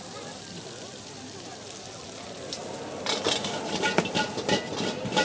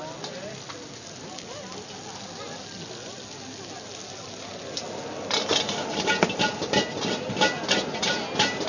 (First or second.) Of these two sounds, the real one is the second